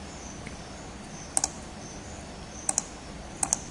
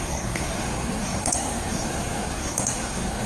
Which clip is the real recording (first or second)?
first